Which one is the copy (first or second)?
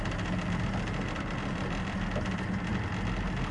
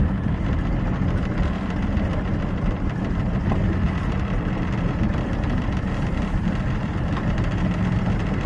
second